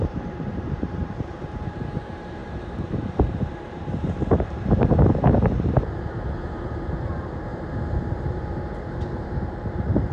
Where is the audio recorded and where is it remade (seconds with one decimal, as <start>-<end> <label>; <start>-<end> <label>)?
0.0-7.5 remade; 7.5-8.2 recorded; 8.2-10.1 remade